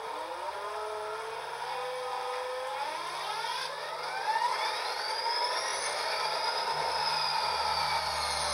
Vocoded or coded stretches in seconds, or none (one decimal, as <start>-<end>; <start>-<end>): none